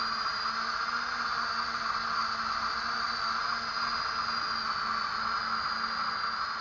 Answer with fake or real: real